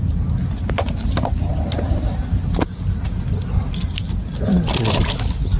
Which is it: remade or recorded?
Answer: recorded